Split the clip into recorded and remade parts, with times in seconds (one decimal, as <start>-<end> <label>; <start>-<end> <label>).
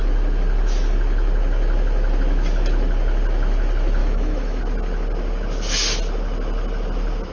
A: 0.0-4.0 recorded; 4.0-4.6 remade; 4.6-7.3 recorded